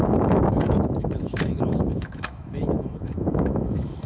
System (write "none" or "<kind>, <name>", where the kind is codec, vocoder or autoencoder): autoencoder, DAC-VAE